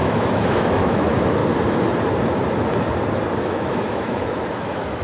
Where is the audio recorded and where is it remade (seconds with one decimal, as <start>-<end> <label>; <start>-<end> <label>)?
0.0-1.4 remade; 1.4-3.4 recorded; 3.4-5.0 remade